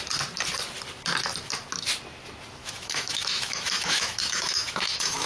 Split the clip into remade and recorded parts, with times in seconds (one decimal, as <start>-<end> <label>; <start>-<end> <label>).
0.0-2.6 recorded; 2.6-5.3 remade